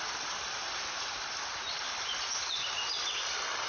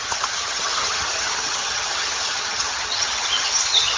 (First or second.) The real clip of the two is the first